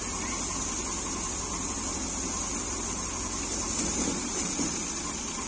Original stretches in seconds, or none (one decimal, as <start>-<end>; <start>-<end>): 0.0-5.5